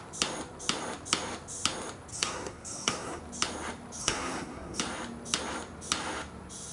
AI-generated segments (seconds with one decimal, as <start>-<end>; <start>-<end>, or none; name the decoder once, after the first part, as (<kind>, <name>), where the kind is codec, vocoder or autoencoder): 2.1-3.2 (codec, SNAC); 4.0-4.8